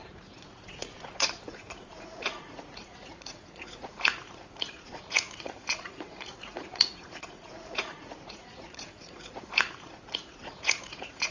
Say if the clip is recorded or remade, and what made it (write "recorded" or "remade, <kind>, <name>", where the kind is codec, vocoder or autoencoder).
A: remade, vocoder, Vocos